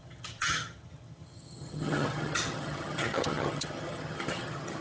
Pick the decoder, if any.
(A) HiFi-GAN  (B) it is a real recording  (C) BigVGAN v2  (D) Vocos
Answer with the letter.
A